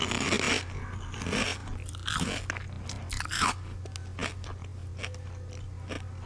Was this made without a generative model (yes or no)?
yes